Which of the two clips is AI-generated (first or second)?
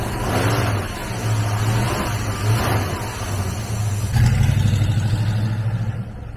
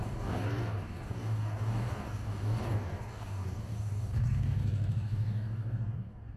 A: second